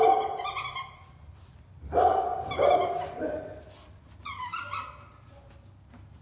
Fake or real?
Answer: real